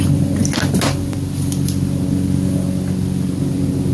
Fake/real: real